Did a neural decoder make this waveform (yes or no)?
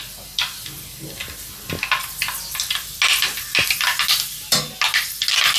no